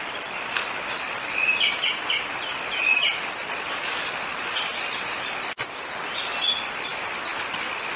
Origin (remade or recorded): recorded